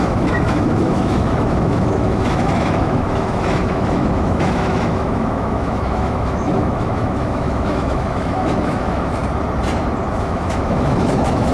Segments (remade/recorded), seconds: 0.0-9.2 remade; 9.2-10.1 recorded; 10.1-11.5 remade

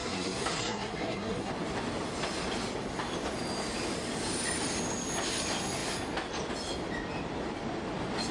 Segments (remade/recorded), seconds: 0.0-1.5 remade; 1.5-8.3 recorded

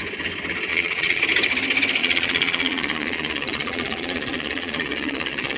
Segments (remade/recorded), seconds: 0.0-0.7 recorded; 0.7-1.2 remade; 1.2-2.0 recorded; 2.0-5.6 remade

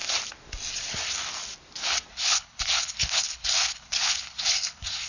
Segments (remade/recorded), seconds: 0.0-2.1 recorded; 2.1-5.1 remade

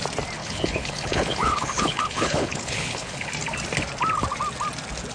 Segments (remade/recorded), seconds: 0.0-0.4 recorded; 0.4-3.3 remade; 3.3-5.1 recorded

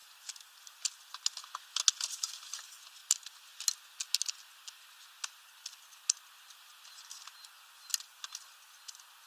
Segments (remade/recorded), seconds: 0.0-9.3 recorded

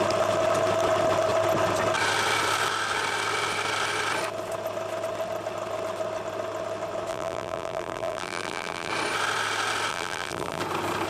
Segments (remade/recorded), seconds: 0.0-7.1 recorded; 7.1-8.9 remade; 8.9-9.9 recorded; 9.9-10.6 remade; 10.6-11.1 recorded